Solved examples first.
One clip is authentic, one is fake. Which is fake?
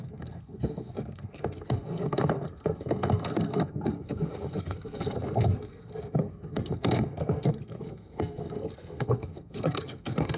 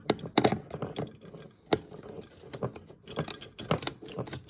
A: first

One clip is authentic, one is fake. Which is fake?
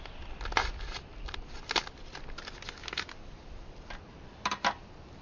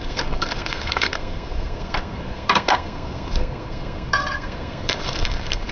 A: second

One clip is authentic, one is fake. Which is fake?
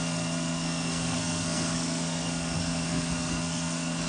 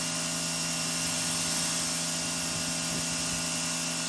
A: first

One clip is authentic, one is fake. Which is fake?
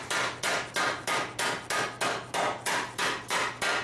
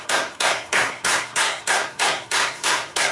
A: second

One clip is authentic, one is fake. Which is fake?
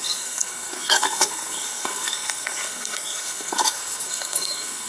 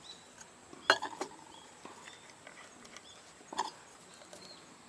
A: first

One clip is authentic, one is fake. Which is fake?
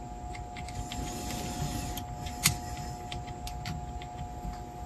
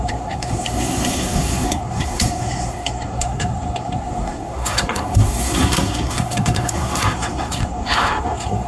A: second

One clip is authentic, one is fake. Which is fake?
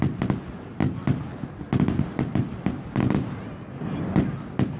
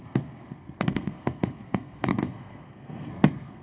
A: second